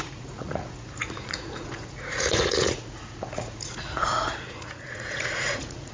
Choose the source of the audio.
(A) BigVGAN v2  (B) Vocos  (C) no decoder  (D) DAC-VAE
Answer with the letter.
B